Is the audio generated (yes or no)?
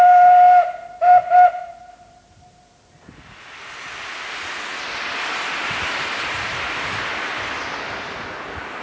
no